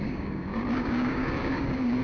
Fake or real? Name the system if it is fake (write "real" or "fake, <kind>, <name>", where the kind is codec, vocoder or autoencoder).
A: fake, codec, DAC